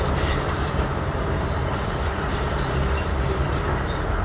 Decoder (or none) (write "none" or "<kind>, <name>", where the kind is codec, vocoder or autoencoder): vocoder, BigVGAN v2